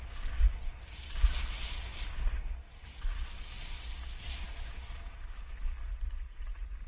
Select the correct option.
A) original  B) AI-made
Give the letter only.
A